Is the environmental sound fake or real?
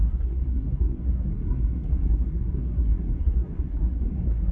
fake